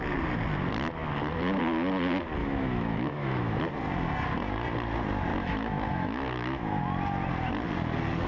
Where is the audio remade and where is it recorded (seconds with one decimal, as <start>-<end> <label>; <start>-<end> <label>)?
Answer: 0.0-2.4 recorded; 2.4-3.6 remade; 3.6-5.3 recorded; 5.3-6.8 remade; 6.8-8.3 recorded